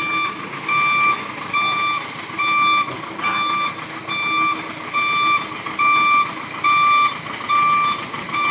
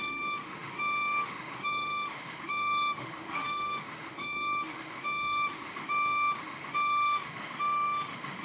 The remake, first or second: second